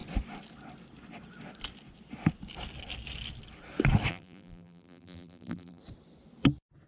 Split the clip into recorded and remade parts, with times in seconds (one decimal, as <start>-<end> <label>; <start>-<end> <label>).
0.0-4.1 recorded; 4.1-5.8 remade; 5.8-6.9 recorded